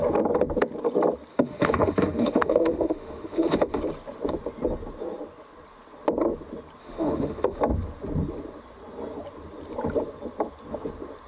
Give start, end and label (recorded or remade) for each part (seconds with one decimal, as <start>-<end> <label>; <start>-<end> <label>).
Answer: 0.0-1.3 recorded; 1.3-3.8 remade; 3.8-6.8 recorded; 6.8-7.6 remade; 7.6-11.3 recorded